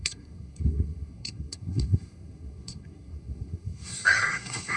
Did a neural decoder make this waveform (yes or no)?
yes